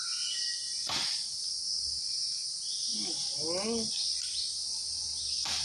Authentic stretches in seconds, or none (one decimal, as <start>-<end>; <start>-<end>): 0.0-5.6